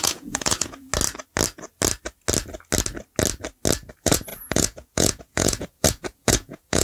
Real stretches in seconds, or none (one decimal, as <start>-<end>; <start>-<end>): 0.9-3.9